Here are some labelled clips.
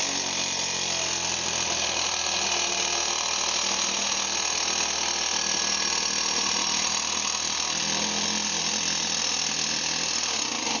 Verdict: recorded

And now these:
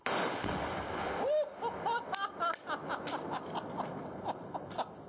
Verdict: recorded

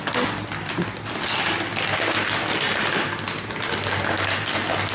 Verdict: recorded